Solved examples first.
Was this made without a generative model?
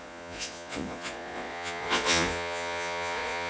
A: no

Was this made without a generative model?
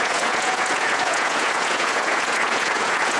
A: no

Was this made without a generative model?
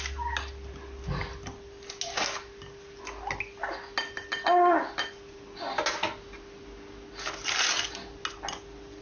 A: yes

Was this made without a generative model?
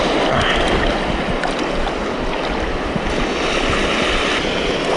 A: yes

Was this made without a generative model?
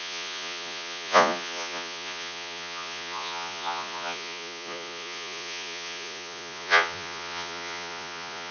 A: no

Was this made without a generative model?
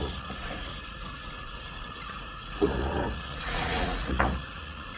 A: no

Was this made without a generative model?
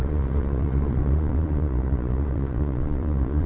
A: no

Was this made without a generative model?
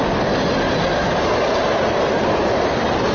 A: yes